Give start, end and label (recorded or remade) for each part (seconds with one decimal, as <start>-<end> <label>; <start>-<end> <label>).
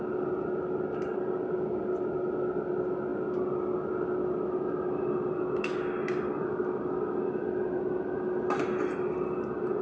0.0-9.8 recorded